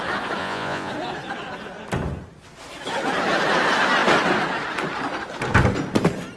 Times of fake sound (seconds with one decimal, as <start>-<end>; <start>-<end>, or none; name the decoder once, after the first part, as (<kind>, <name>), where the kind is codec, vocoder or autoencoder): 0.4-0.9 (vocoder, Vocos)